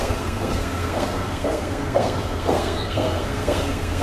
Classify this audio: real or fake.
fake